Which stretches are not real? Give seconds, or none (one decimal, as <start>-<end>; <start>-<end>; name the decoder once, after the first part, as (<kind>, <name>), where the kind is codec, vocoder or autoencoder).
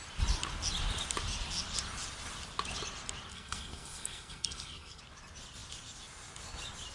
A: 3.3-5.0 (codec, SNAC)